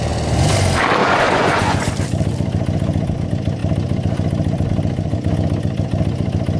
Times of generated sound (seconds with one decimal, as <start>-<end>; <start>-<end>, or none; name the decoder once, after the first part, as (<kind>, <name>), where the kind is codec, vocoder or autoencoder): 1.0-1.9 (vocoder, Vocos)